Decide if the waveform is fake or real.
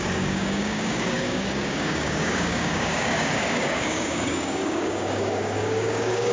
fake